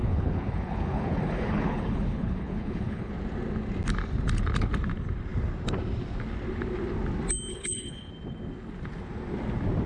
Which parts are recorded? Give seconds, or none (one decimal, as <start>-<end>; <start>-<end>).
3.1-7.5; 8.1-9.9